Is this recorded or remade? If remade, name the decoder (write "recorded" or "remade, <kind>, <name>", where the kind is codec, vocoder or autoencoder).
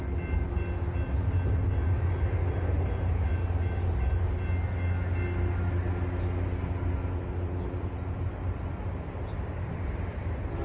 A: recorded